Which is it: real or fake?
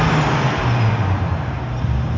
real